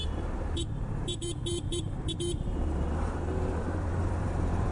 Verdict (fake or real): fake